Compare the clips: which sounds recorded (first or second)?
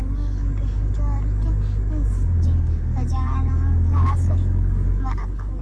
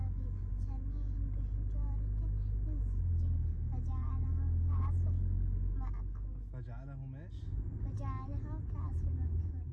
second